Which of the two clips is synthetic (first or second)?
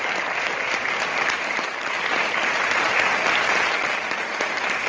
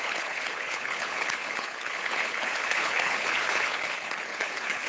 second